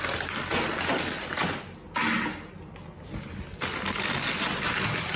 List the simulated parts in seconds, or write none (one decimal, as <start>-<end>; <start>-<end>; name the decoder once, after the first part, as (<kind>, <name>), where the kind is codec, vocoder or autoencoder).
none